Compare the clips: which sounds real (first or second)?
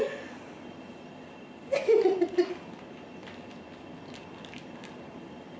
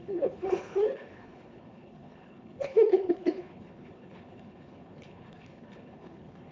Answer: first